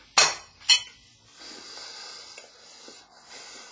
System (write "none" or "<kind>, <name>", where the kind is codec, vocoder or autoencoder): none